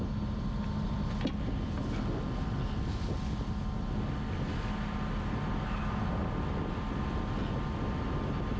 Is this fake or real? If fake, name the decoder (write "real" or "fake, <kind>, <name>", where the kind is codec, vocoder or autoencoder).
real